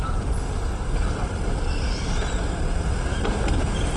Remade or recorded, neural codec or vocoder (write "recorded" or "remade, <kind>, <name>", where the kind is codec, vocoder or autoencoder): recorded